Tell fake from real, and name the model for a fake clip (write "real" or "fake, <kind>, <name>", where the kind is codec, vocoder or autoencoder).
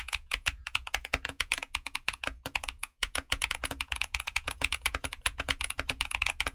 fake, vocoder, Vocos